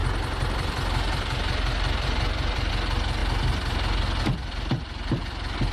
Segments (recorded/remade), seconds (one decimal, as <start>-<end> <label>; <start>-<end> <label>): 0.0-2.7 remade; 2.7-5.7 recorded